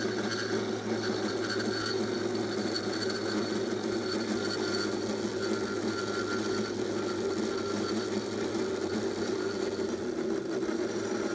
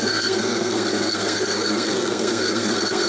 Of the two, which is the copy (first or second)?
second